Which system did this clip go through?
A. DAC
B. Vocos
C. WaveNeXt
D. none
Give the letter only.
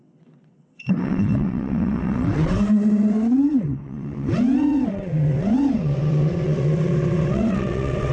C